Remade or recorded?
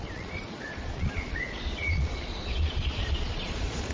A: remade